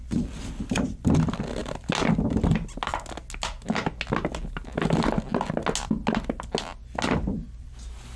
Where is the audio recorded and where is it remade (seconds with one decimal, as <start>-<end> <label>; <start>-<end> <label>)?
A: 0.0-8.2 recorded